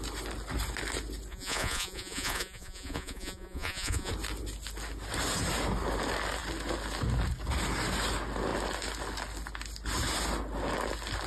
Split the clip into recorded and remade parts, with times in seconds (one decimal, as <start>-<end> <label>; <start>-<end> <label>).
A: 0.0-1.3 recorded; 1.3-4.1 remade; 4.1-11.3 recorded